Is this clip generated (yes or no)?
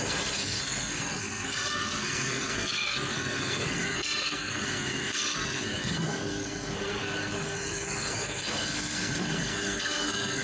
yes